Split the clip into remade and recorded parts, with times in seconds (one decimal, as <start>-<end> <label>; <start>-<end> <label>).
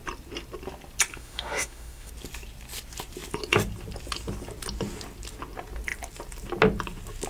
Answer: 0.0-1.1 recorded; 1.1-2.1 remade; 2.1-7.3 recorded